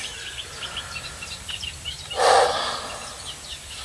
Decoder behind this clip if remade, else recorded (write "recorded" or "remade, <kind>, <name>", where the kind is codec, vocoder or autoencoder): recorded